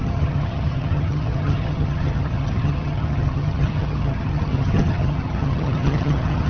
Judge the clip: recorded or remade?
remade